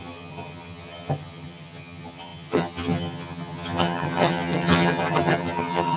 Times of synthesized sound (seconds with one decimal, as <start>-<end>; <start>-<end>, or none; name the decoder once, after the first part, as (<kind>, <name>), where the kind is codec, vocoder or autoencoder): 0.0-6.0 (vocoder, HiFi-GAN)

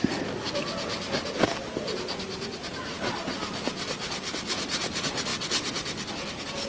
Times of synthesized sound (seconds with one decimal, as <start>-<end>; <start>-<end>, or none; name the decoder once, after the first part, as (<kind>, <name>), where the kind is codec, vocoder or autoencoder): none

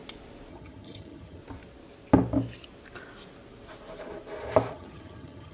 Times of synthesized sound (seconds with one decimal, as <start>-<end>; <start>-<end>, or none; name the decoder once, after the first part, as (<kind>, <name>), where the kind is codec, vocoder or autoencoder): 0.5-1.4 (vocoder, HiFi-GAN); 4.7-5.5

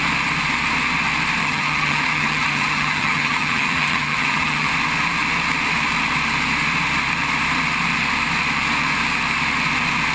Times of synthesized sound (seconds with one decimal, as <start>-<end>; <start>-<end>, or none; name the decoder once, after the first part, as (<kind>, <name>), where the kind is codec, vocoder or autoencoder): 1.4-4.7 (vocoder, HiFi-GAN)

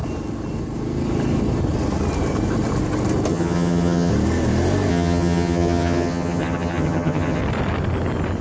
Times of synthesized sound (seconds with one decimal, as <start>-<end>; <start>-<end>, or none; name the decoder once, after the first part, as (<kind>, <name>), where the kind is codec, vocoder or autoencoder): 3.3-4.1 (vocoder, HiFi-GAN); 4.9-7.4

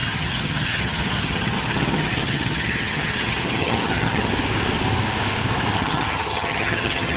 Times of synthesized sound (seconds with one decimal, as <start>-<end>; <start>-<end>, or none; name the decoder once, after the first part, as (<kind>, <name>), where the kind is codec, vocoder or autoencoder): 0.0-4.3 (vocoder, HiFi-GAN); 5.8-7.2